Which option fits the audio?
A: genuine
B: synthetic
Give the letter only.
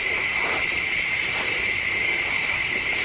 B